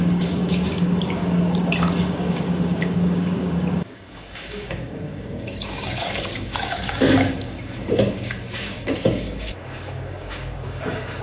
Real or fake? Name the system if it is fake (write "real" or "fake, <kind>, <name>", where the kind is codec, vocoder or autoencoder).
fake, codec, DAC